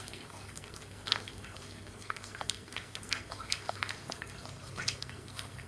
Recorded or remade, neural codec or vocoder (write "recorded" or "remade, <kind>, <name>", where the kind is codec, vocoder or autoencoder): remade, codec, SNAC